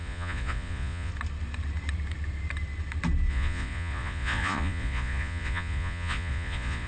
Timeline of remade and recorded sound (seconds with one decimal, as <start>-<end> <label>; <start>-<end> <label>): 0.0-1.1 remade; 1.1-3.3 recorded; 3.3-6.9 remade